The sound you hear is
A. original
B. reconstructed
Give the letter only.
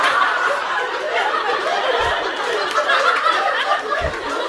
B